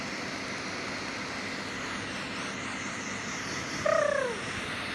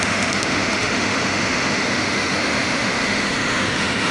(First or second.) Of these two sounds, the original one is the first